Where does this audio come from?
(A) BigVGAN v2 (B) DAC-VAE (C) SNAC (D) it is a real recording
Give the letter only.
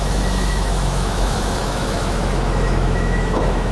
B